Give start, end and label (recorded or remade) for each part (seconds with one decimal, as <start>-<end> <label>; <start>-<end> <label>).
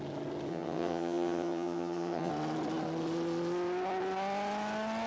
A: 0.0-0.5 recorded; 0.5-2.3 remade; 2.3-5.1 recorded